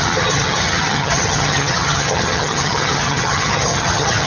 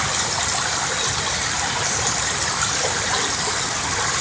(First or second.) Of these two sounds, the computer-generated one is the first